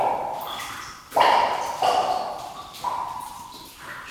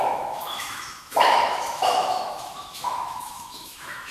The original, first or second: first